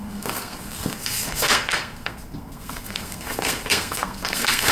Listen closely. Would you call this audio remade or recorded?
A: remade